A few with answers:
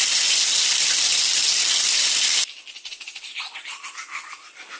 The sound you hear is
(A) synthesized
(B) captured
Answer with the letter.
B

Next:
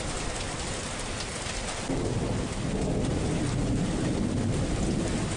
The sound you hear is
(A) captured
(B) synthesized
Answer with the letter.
A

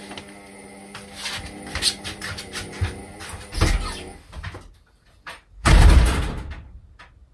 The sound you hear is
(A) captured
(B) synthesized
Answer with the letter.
A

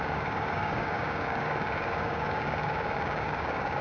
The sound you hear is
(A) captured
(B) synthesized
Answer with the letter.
B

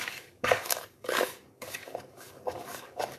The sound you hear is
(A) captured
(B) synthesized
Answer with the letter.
B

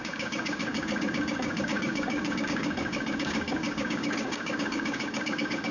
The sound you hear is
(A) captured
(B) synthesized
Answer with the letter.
B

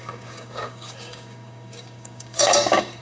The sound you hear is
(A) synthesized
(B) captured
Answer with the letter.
A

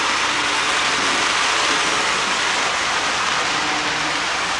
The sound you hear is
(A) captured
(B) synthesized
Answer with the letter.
A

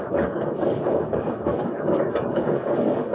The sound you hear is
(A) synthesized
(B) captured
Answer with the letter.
A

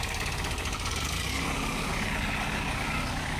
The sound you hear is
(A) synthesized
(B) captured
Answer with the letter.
A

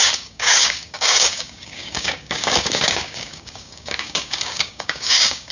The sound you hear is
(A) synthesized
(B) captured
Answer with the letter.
A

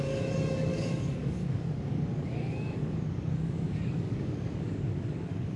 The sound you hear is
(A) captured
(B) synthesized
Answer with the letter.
B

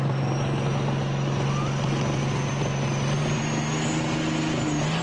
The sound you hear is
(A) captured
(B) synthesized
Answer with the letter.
A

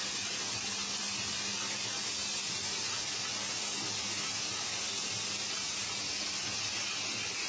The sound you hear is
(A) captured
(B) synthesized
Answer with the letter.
A